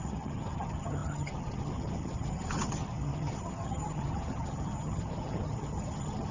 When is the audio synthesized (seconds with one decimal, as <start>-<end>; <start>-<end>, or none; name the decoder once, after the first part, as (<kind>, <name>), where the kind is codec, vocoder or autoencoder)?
0.0-6.3 (vocoder, HiFi-GAN)